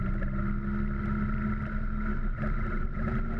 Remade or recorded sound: recorded